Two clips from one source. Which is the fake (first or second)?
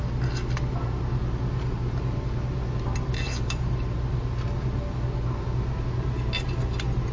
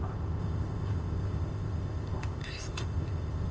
second